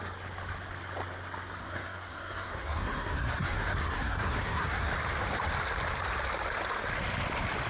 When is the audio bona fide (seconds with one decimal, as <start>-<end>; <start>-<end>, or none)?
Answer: 0.0-1.6; 4.9-7.7